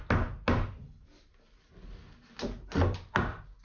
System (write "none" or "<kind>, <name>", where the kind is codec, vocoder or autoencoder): none